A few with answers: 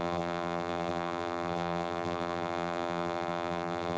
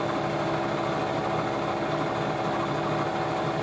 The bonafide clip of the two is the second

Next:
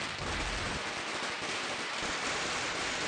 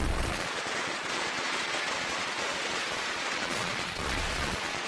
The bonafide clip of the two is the first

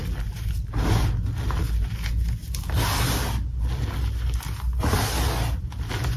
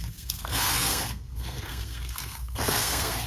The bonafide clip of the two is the first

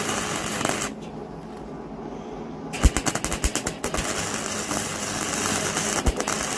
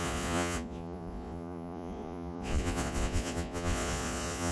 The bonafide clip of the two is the first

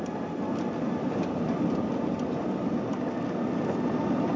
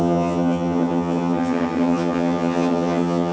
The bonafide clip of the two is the first